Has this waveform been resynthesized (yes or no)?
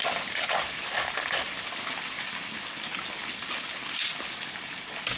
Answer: no